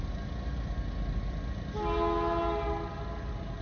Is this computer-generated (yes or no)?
no